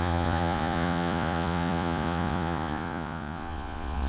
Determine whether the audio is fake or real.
fake